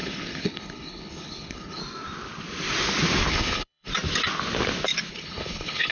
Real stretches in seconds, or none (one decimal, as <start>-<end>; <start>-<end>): 1.8-3.3; 3.9-5.1